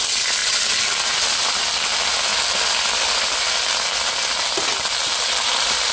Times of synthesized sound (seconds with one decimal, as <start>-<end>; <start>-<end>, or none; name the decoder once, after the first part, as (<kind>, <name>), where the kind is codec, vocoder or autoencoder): none

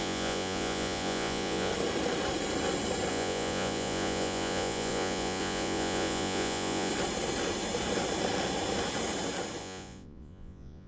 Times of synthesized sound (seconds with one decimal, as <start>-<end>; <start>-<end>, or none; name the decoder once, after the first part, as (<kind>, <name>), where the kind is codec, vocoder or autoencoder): 0.0-1.7 (vocoder, Vocos); 3.1-6.9; 9.6-10.9

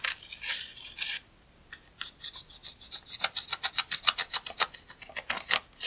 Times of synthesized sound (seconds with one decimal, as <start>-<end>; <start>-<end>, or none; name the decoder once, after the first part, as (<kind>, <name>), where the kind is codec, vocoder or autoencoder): 0.7-1.8 (vocoder, BigVGAN v2); 2.6-3.7

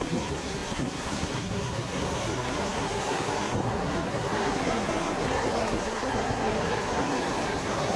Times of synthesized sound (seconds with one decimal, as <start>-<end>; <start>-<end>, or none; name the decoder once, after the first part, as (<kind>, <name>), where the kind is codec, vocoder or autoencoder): 0.0-8.0 (codec, SNAC)

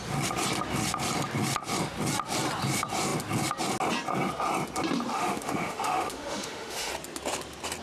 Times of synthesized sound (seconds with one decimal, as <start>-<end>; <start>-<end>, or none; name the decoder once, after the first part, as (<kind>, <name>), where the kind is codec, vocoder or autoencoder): 5.1-6.9 (autoencoder, DAC-VAE)

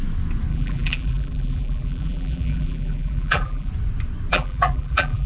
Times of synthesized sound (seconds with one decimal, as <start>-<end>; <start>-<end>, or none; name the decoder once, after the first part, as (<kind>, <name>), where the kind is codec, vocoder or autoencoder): 0.5-3.7 (vocoder, BigVGAN v2); 4.3-5.3

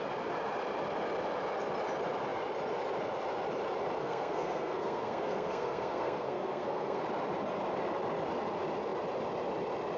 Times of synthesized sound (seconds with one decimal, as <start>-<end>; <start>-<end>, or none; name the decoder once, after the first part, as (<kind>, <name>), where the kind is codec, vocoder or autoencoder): 4.0-7.0 (codec, SNAC)